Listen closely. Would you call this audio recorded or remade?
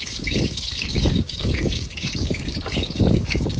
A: remade